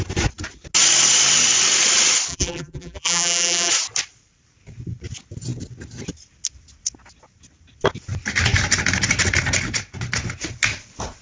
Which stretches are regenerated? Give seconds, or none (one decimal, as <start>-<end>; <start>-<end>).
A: 2.3-3.7

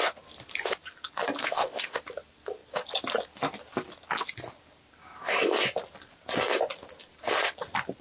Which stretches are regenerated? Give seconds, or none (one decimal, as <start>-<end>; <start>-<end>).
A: 1.4-2.0

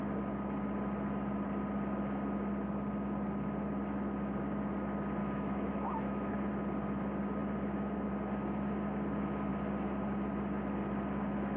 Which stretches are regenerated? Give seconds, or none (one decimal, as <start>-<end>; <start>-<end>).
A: 5.2-6.5

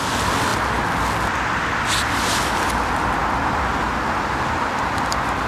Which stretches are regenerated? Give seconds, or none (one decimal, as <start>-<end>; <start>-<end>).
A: none

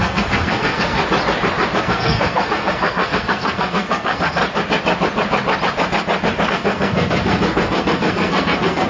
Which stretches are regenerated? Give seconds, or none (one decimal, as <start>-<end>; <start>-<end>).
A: 0.0-1.0; 1.8-4.4; 6.5-8.9

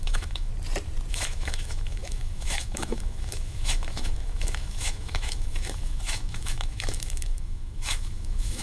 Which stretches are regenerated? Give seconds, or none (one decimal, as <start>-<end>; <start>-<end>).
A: 0.0-0.5; 1.1-8.6

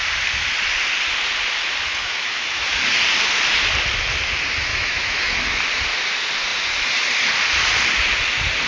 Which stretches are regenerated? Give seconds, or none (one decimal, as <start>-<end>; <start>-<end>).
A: 1.9-2.6; 4.7-5.6

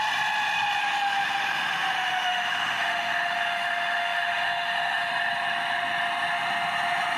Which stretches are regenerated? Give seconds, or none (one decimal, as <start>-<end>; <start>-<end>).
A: 0.8-5.1